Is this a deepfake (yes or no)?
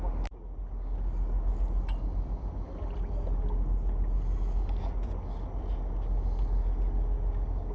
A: no